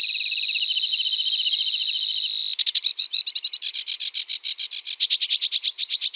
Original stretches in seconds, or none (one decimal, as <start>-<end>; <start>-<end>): 0.0-6.2